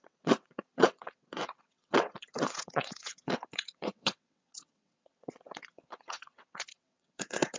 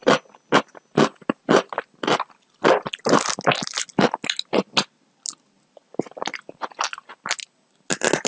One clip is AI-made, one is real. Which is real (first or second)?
second